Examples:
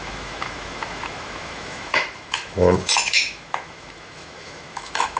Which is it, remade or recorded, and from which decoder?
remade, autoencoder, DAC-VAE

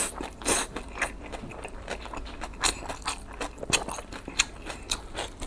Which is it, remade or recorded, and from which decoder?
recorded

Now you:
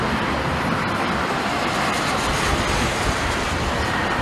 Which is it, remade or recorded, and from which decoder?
recorded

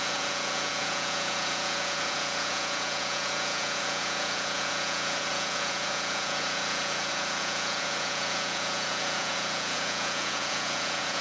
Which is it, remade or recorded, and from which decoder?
remade, vocoder, Vocos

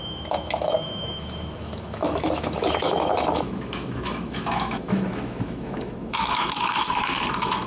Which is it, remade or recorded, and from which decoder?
remade, autoencoder, DAC-VAE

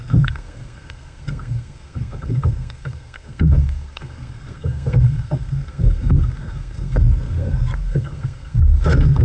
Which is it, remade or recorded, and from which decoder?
remade, codec, SNAC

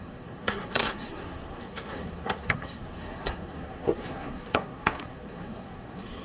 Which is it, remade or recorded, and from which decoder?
remade, codec, SNAC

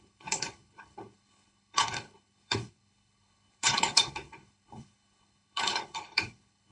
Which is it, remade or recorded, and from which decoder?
remade, codec, HILCodec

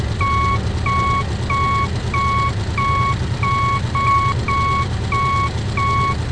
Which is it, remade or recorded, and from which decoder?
recorded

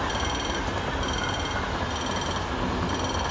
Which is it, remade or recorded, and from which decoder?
recorded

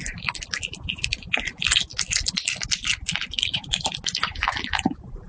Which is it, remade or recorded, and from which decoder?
recorded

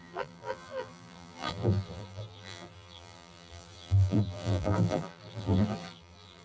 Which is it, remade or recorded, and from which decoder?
remade, vocoder, BigVGAN v2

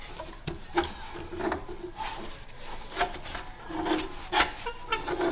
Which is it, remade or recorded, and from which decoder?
recorded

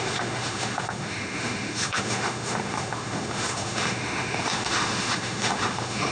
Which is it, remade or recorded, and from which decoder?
remade, autoencoder, DAC-VAE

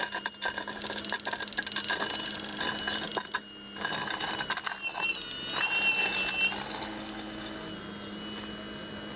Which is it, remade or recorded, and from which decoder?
recorded